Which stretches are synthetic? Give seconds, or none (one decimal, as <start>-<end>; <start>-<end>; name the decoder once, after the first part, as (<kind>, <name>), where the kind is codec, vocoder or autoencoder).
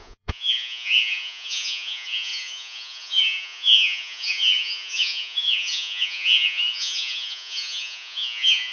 0.0-8.7 (vocoder, Vocos)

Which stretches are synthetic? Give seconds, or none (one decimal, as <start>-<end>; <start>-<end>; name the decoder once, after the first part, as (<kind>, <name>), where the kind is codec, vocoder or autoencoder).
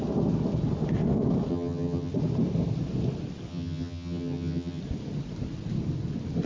1.5-2.1 (vocoder, HiFi-GAN); 3.5-4.8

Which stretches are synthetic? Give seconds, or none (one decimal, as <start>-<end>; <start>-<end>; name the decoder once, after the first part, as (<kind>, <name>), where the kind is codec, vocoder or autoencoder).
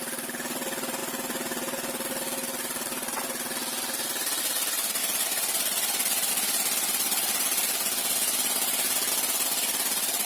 none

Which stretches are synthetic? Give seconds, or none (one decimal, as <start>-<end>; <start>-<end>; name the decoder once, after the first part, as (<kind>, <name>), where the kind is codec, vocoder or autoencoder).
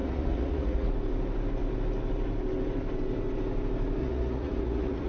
0.0-0.9 (vocoder, Vocos); 4.0-5.1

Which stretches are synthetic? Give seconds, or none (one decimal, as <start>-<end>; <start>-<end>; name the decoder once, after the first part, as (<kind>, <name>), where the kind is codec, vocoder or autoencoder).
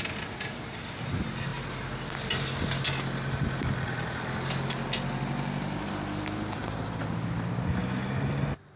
6.6-7.5 (vocoder, BigVGAN v2)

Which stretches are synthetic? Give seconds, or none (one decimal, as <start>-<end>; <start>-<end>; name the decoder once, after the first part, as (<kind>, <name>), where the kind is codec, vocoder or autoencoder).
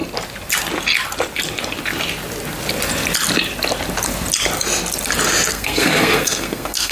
5.5-6.9 (codec, SNAC)